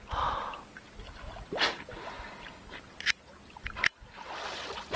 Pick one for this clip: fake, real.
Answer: real